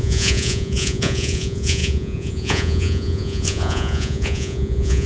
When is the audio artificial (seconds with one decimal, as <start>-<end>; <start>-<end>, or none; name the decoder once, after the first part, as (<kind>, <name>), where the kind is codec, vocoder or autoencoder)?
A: 0.0-5.1 (vocoder, Vocos)